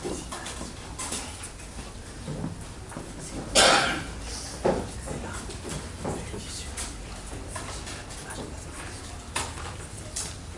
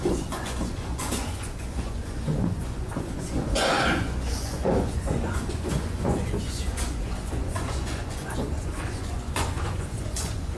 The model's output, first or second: second